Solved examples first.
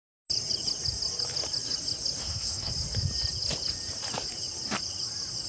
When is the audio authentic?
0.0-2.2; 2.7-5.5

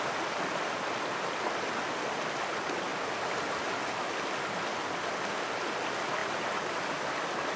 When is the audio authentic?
0.0-7.6

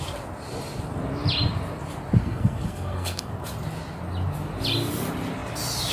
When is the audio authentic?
0.0-2.2; 3.3-5.9

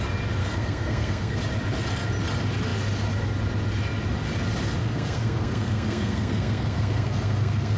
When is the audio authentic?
0.0-0.4; 1.4-4.8

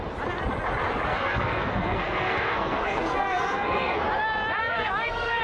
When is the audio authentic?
0.0-1.1; 4.0-4.6

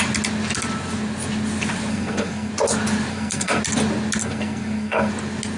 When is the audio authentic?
0.0-1.9; 2.5-3.1; 3.6-4.2; 5.1-5.6

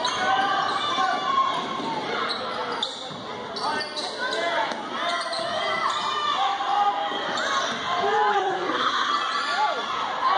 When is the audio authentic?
0.0-8.3; 9.1-10.4

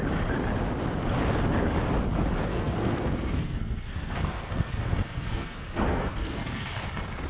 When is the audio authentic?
0.0-2.5; 6.7-7.3